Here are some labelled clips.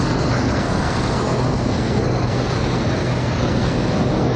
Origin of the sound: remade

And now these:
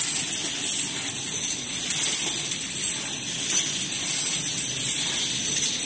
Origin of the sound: recorded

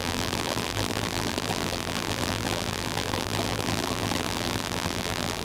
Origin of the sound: remade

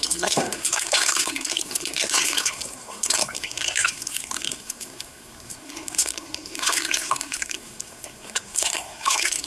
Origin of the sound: remade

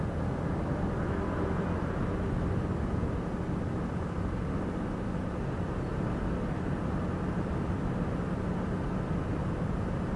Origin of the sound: recorded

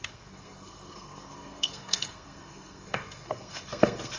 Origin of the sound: remade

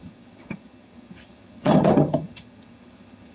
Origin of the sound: remade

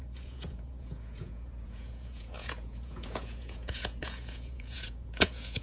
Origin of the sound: remade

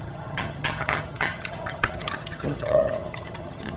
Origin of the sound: remade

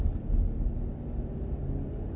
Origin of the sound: recorded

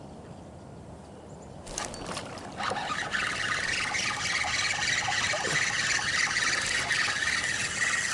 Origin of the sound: recorded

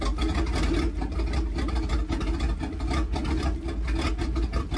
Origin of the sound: recorded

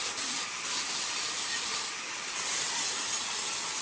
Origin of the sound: recorded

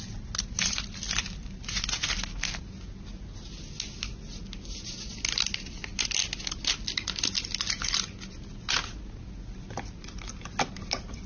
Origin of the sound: recorded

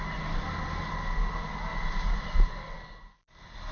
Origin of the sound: recorded